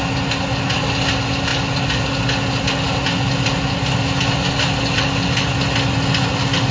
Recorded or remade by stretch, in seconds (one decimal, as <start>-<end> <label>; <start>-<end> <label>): 0.0-6.7 recorded